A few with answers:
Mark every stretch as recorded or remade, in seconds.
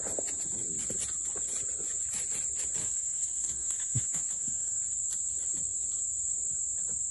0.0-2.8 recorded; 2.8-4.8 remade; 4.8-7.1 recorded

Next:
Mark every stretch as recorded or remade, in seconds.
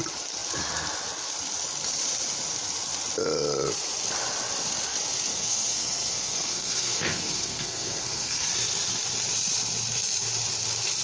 0.0-5.3 recorded; 5.3-8.5 remade; 8.5-11.0 recorded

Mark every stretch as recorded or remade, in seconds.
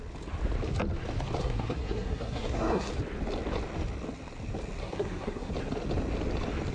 0.0-1.4 recorded; 1.4-2.9 remade; 2.9-4.8 recorded; 4.8-5.5 remade; 5.5-6.7 recorded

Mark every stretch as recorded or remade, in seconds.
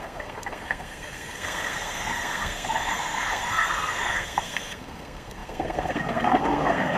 0.0-7.0 remade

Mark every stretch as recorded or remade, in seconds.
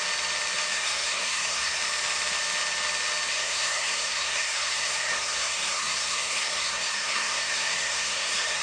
0.0-0.7 recorded; 0.7-1.8 remade; 1.8-3.3 recorded; 3.3-8.6 remade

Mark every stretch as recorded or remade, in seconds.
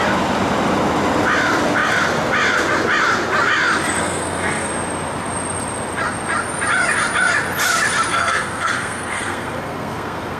0.0-4.0 recorded; 4.0-4.7 remade; 4.7-8.1 recorded; 8.1-10.4 remade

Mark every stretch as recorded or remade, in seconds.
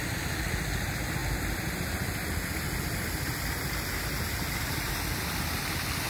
0.0-6.1 recorded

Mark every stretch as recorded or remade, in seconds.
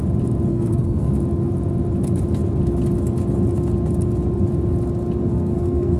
0.0-0.5 recorded; 0.5-1.1 remade; 1.1-5.3 recorded; 5.3-6.0 remade